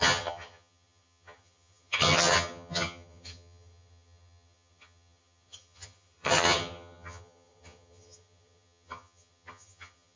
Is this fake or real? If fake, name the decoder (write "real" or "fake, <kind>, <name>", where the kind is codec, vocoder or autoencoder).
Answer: fake, vocoder, HiFi-GAN